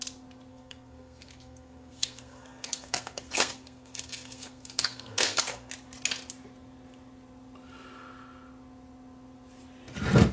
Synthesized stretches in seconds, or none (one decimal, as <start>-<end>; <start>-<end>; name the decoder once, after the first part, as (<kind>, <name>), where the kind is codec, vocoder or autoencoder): 0.5-5.7 (codec, SNAC)